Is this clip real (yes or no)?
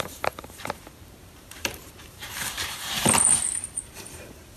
no